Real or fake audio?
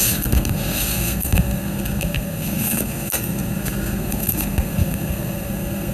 fake